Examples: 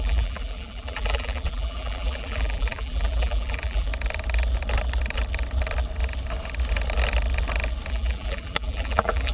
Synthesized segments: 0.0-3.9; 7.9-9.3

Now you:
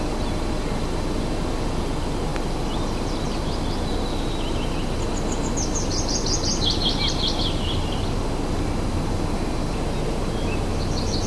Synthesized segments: none

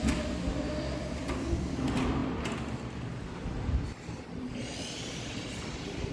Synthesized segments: 0.0-6.1

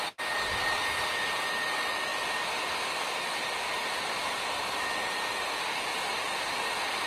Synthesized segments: 3.8-4.6